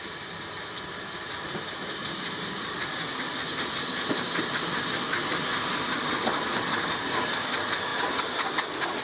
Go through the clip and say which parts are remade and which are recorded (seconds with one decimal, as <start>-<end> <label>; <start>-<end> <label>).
0.0-9.0 recorded